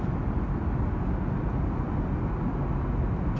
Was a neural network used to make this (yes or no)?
no